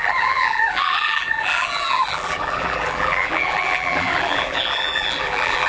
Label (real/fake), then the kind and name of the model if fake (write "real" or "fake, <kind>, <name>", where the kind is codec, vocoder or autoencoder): fake, vocoder, BigVGAN v2